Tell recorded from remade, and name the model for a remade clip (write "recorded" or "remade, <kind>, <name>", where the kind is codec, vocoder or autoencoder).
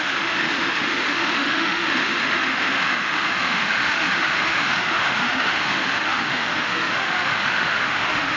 remade, autoencoder, DAC-VAE